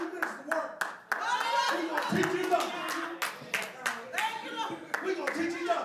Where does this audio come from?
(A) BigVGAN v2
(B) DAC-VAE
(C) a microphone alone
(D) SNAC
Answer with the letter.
C